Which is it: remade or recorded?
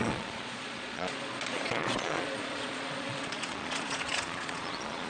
remade